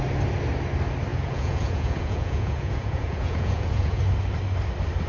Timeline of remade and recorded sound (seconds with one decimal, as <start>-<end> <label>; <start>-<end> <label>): 0.0-1.1 recorded; 1.1-4.0 remade; 4.0-5.1 recorded